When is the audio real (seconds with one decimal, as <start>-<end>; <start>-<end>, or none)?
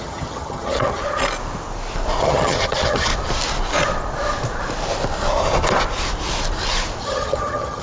1.0-2.2; 3.1-7.0